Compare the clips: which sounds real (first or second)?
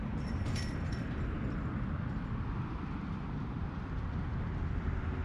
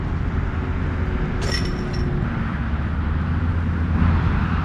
second